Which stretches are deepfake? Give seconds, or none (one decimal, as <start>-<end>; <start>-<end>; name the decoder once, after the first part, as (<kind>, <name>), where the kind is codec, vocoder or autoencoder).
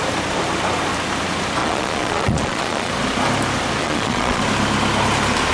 1.6-2.9 (vocoder, Vocos); 3.8-4.4